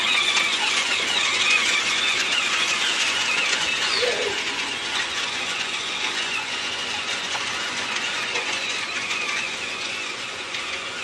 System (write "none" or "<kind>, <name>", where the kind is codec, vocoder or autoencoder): vocoder, Vocos